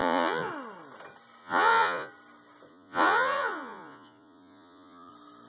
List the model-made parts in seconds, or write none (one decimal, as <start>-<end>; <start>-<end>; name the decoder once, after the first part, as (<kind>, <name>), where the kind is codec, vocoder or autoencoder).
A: 0.0-0.5 (vocoder, Vocos); 1.4-2.1; 2.7-5.1